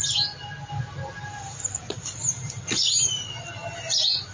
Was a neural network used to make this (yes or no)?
no